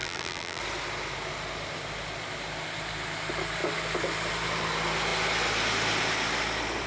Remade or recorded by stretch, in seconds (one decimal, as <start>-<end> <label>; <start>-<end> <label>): 0.0-0.6 remade; 0.6-6.9 recorded